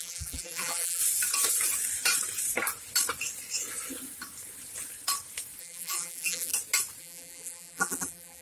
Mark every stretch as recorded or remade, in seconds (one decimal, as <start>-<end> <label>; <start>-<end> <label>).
0.0-1.0 remade; 1.0-5.6 recorded; 5.6-6.5 remade; 6.5-7.0 recorded; 7.0-8.4 remade